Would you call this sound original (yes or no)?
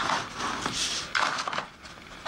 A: yes